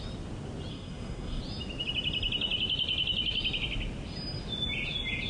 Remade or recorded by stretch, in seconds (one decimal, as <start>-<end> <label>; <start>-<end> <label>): 0.0-0.7 recorded; 0.7-1.4 remade; 1.4-5.3 recorded